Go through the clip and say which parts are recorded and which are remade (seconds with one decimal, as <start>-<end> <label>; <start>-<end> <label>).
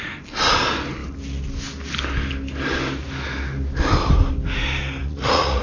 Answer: 0.0-5.0 recorded; 5.0-5.6 remade